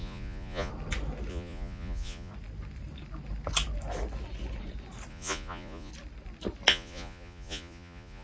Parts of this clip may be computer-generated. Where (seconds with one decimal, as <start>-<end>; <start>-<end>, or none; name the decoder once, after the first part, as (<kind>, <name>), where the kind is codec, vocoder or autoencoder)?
0.0-0.7 (vocoder, Vocos); 1.3-2.3; 5.1-5.9; 6.7-8.2